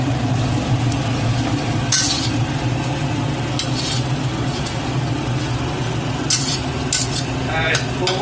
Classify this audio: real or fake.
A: real